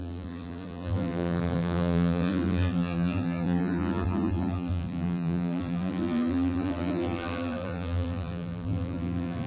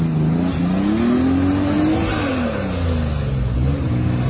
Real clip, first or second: second